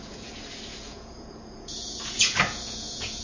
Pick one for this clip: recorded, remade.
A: remade